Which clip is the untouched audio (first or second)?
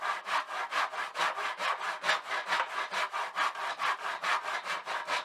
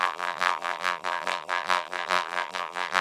first